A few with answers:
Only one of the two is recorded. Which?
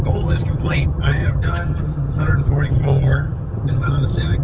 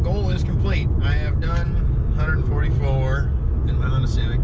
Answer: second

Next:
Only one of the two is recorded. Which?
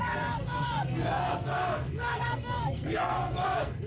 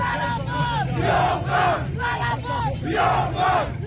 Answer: second